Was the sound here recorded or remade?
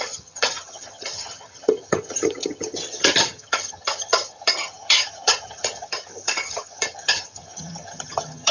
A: remade